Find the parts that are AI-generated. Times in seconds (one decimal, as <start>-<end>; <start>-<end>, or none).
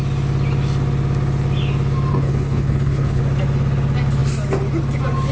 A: 2.1-3.2